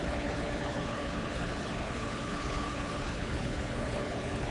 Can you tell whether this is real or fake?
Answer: fake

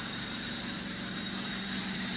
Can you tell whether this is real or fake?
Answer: fake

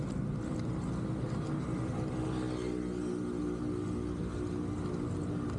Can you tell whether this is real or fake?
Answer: real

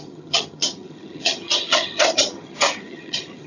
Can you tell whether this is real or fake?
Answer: fake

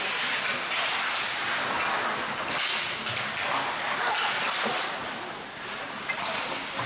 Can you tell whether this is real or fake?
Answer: real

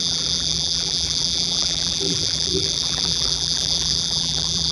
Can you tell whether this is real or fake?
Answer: fake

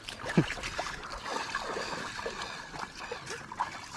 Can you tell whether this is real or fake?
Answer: real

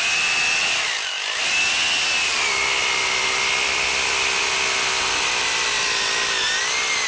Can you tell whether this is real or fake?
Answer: real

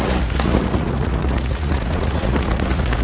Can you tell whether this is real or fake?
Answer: fake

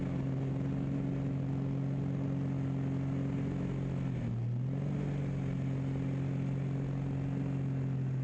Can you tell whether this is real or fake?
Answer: real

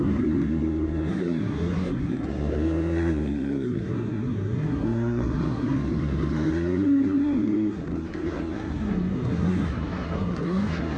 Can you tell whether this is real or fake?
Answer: fake